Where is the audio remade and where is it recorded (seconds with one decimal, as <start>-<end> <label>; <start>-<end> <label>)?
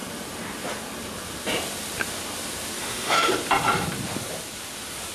0.0-2.8 recorded; 2.8-3.3 remade; 3.3-5.1 recorded